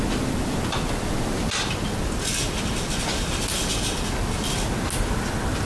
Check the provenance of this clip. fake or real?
real